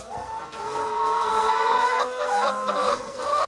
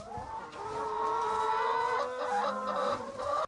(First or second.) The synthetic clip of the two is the first